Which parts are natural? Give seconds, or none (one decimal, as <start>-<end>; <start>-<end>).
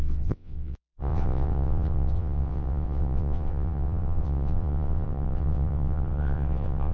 none